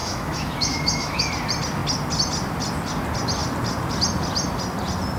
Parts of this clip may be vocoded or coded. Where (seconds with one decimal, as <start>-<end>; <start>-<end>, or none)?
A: 0.0-1.3